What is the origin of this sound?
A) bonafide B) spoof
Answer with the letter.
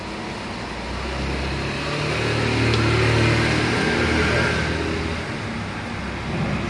A